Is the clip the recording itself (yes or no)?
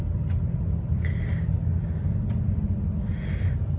yes